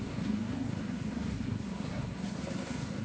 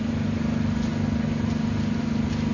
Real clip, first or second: second